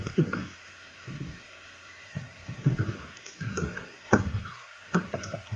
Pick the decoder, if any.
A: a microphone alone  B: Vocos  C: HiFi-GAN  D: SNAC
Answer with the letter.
D